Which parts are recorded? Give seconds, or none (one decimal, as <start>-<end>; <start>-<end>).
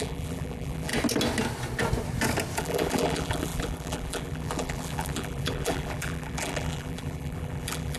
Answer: 0.9-2.6